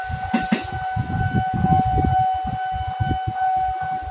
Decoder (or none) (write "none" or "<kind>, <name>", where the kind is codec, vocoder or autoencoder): none